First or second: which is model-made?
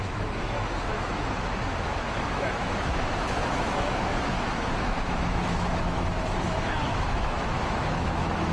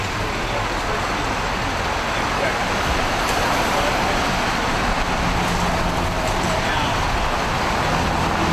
first